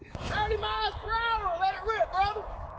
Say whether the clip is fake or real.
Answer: fake